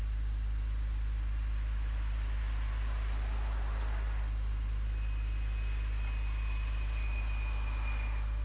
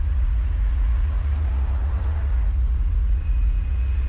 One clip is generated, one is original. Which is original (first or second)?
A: first